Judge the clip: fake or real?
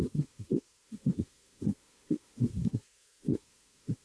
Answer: fake